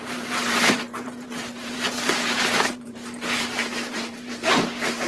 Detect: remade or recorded remade